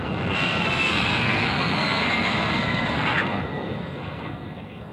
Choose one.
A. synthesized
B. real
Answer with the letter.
A